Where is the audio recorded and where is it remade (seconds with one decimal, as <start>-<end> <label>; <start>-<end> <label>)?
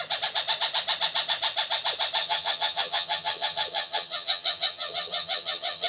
0.0-2.2 recorded; 2.2-5.9 remade